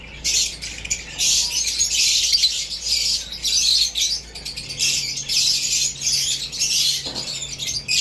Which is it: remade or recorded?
recorded